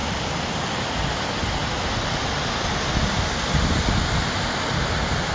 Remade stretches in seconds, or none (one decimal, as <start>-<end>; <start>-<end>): none